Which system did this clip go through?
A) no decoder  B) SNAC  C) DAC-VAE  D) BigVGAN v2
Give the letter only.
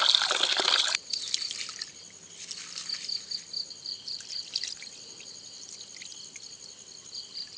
A